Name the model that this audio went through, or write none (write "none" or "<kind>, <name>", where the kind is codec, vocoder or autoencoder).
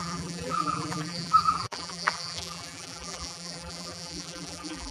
vocoder, BigVGAN v2